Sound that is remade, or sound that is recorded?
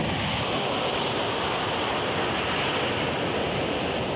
recorded